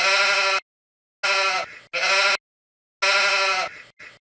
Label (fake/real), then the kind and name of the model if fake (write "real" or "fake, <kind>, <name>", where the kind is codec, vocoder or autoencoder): real